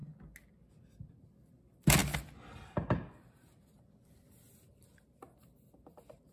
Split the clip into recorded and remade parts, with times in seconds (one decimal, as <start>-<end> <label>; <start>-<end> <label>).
0.0-6.3 recorded

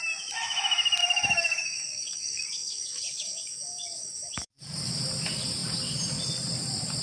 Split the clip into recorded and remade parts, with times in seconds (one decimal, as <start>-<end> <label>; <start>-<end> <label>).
0.0-1.0 recorded; 1.0-4.9 remade; 4.9-7.0 recorded

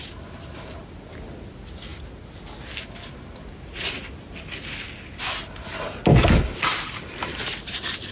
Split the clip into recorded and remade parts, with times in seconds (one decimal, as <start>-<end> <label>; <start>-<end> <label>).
0.0-8.1 recorded

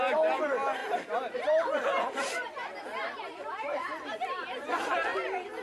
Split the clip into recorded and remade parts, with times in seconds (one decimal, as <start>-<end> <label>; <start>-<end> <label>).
0.0-5.6 recorded